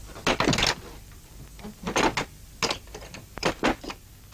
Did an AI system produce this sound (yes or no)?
no